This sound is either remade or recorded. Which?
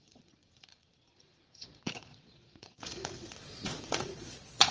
remade